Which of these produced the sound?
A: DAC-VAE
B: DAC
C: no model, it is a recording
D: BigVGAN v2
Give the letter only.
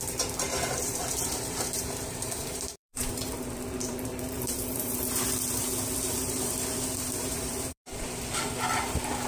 D